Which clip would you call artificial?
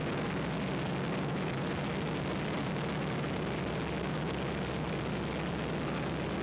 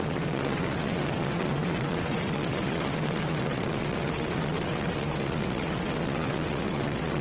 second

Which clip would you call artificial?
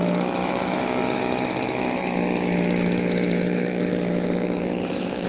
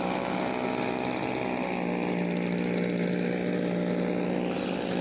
first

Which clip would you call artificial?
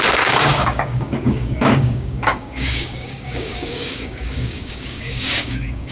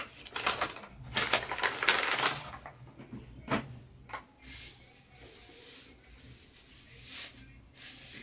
first